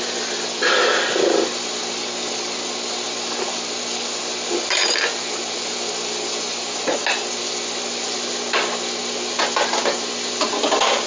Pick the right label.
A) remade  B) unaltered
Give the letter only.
B